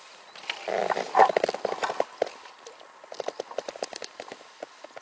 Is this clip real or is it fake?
real